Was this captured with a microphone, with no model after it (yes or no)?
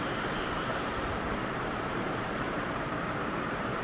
no